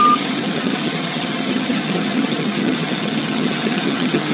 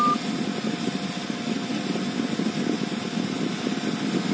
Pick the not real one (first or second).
first